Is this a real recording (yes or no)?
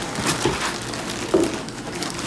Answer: yes